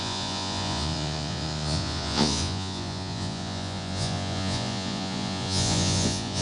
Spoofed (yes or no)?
yes